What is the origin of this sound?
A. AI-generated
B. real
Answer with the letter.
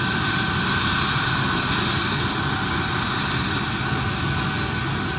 B